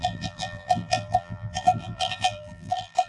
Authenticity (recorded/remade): remade